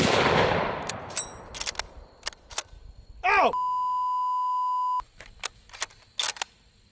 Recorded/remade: recorded